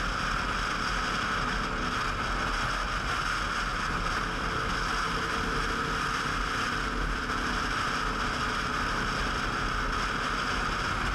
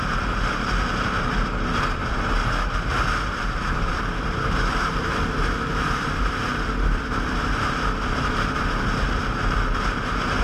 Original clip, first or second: first